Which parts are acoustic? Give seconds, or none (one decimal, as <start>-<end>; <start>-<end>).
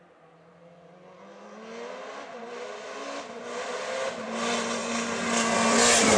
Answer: 0.0-6.2